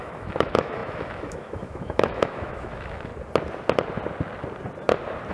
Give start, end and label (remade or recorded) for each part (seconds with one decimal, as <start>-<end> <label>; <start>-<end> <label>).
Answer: 0.0-3.1 remade; 3.1-5.3 recorded

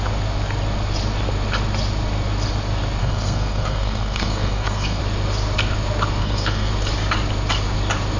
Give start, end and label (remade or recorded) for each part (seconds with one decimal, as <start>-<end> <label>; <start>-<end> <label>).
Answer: 0.0-3.0 recorded; 3.0-5.0 remade; 5.0-6.2 recorded; 6.2-6.7 remade; 6.7-8.2 recorded